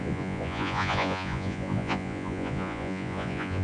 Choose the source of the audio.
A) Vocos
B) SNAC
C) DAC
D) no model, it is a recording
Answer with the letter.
A